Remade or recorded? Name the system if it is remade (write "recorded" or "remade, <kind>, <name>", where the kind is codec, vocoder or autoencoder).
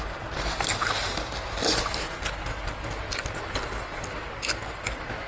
recorded